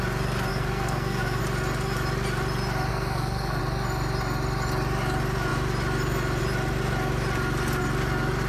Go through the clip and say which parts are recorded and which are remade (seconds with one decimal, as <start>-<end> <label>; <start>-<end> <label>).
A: 0.0-0.5 recorded; 0.5-1.4 remade; 1.4-2.9 recorded; 2.9-3.6 remade; 3.6-8.5 recorded